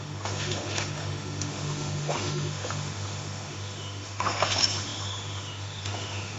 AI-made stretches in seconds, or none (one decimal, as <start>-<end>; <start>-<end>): 0.0-6.4